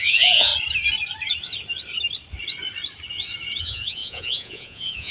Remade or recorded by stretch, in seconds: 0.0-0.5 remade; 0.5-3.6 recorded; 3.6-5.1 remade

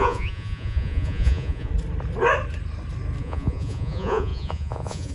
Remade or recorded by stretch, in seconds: 0.0-1.7 remade; 1.7-3.2 recorded; 3.2-5.1 remade

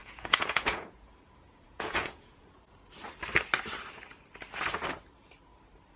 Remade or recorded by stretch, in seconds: 0.0-2.6 remade; 2.6-6.0 recorded

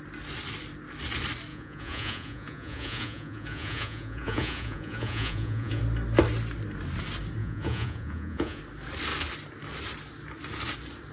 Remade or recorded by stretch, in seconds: 0.0-1.5 recorded; 1.5-5.8 remade; 5.8-7.4 recorded; 7.4-8.6 remade; 8.6-11.1 recorded

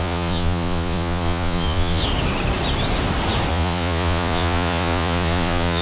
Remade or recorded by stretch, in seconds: 0.0-2.0 remade; 2.0-3.5 recorded; 3.5-5.8 remade